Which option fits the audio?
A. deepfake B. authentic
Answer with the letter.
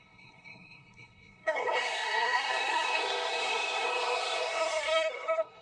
A